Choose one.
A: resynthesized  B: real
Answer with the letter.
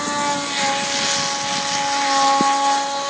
B